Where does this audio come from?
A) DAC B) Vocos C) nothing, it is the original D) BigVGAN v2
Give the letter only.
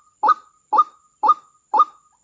C